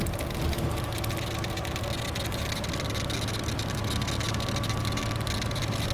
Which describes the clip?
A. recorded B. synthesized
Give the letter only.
A